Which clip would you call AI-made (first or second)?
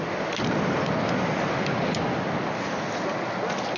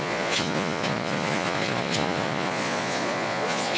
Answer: second